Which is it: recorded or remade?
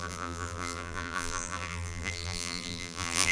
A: remade